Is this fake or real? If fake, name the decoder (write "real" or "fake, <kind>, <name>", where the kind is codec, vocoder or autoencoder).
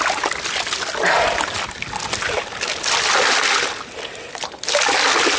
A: real